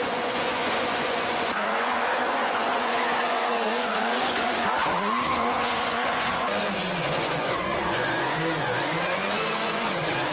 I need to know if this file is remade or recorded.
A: remade